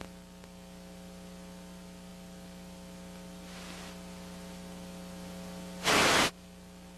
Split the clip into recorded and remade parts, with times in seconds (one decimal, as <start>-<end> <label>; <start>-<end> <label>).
0.0-7.0 recorded